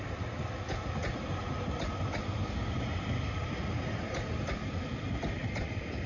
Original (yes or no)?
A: yes